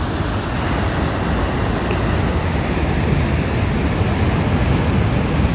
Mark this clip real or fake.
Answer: real